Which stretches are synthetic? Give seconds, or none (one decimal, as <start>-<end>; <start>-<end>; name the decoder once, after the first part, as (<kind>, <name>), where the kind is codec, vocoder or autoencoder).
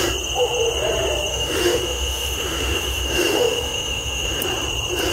1.3-4.4 (autoencoder, DAC-VAE)